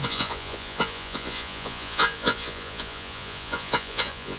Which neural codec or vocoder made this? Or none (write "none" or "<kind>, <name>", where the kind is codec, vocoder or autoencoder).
vocoder, Vocos